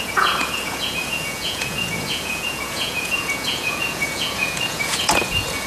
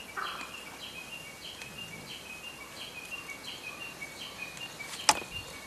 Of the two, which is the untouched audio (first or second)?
second